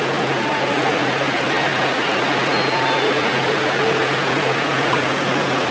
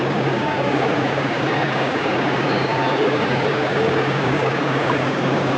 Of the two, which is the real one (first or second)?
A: first